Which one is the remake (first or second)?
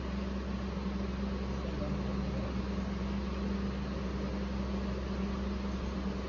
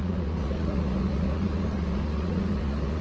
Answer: second